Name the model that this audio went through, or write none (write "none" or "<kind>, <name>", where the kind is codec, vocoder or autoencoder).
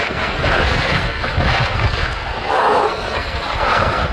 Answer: codec, SNAC